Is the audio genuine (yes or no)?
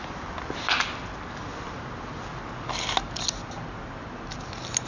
yes